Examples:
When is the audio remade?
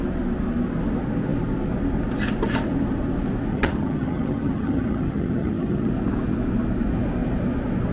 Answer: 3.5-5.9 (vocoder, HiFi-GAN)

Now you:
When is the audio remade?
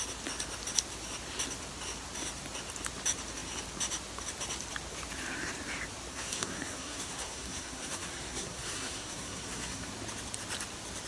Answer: 6.1-9.9 (codec, SNAC)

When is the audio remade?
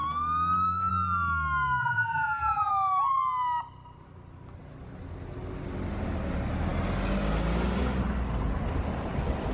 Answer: 1.8-2.7 (vocoder, BigVGAN v2)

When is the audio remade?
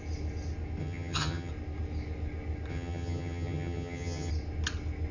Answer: 0.8-1.5 (vocoder, HiFi-GAN); 2.7-4.3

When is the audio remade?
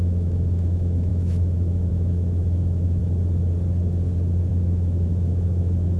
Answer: 0.0-3.0 (autoencoder, DAC-VAE); 4.5-6.0